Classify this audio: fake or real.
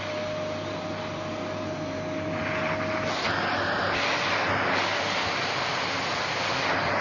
real